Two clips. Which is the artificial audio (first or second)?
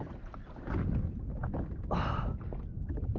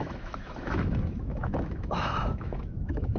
second